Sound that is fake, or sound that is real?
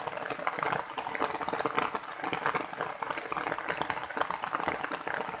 real